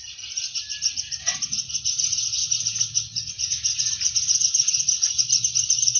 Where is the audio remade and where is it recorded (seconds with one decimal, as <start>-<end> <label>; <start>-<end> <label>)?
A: 0.0-6.0 recorded